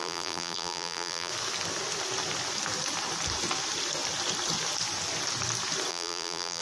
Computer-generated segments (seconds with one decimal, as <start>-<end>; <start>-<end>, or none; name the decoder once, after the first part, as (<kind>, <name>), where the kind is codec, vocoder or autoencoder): 0.0-1.3 (vocoder, BigVGAN v2); 5.9-6.6